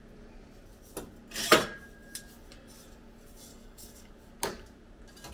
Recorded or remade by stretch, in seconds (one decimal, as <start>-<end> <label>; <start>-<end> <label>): 0.0-3.5 recorded; 3.5-4.1 remade; 4.1-5.3 recorded